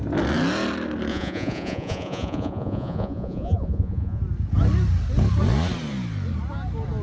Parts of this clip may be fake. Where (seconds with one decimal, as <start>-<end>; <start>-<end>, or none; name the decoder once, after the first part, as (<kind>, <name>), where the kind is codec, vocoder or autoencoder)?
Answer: 1.1-4.2 (vocoder, Vocos)